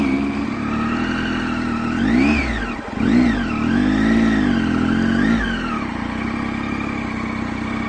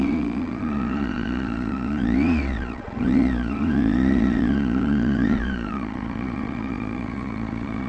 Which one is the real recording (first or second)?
first